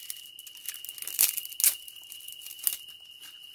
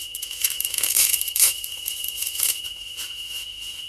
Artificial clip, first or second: second